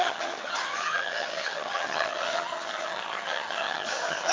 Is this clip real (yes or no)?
no